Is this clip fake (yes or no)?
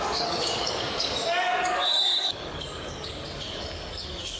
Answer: yes